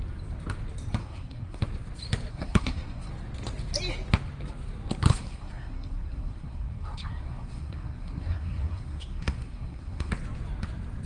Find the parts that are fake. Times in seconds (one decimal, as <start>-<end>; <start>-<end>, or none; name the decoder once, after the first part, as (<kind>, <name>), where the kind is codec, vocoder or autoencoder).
1.0-1.6 (codec, SNAC); 2.3-3.1; 5.1-10.1